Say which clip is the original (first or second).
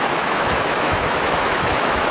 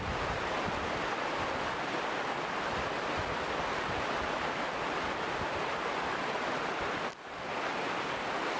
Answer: second